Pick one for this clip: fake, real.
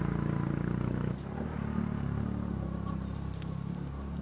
real